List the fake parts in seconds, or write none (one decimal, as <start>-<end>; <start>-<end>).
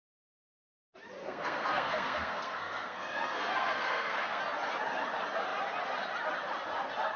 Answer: 1.2-4.4